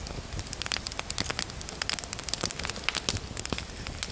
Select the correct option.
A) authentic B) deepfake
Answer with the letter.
A